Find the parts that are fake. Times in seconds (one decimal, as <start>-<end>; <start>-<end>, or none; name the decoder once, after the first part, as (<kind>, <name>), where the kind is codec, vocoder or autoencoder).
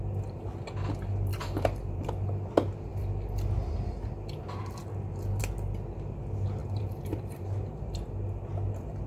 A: 1.3-2.1 (vocoder, BigVGAN v2); 6.6-7.9